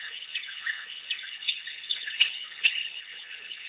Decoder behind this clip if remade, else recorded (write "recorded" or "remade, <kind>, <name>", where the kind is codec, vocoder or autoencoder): remade, codec, HILCodec